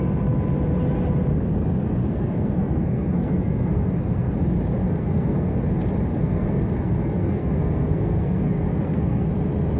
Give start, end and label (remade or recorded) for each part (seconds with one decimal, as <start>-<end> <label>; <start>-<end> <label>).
0.0-2.0 recorded; 2.0-4.3 remade; 4.3-4.8 recorded; 4.8-5.6 remade; 5.6-6.1 recorded; 6.1-9.3 remade; 9.3-9.8 recorded